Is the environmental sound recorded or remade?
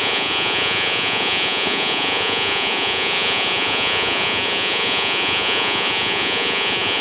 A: remade